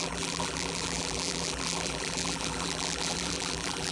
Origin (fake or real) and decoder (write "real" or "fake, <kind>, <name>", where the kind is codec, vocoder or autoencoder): fake, vocoder, BigVGAN v2